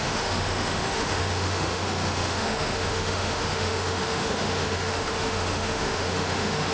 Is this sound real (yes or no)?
no